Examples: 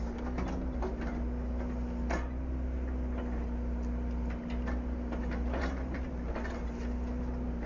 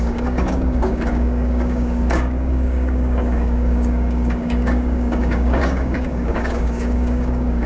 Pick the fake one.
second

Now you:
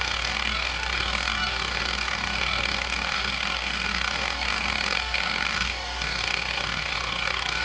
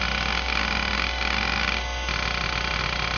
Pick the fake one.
first